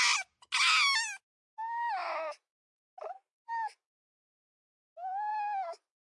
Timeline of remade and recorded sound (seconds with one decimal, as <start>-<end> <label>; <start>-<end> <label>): 0.0-2.0 recorded; 2.0-2.6 remade; 2.6-6.1 recorded